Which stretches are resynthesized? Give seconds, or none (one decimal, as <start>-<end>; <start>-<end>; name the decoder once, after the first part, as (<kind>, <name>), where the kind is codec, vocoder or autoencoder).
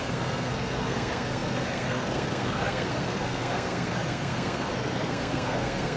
0.0-6.0 (codec, SNAC)